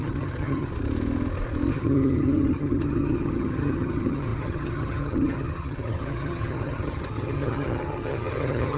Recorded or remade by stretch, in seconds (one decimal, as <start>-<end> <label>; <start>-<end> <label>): 0.0-0.7 remade; 0.7-1.7 recorded; 1.7-8.8 remade